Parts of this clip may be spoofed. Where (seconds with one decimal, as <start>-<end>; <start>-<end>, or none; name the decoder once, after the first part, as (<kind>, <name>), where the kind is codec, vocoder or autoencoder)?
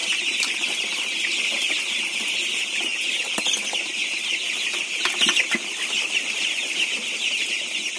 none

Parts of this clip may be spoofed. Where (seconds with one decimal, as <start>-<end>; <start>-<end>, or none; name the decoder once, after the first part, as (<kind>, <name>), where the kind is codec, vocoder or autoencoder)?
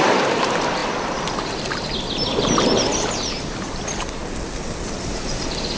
none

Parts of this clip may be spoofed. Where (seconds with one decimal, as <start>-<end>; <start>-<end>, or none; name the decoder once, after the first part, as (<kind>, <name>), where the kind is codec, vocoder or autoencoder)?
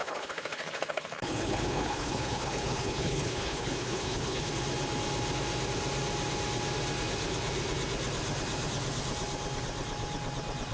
0.0-4.5 (codec, HILCodec)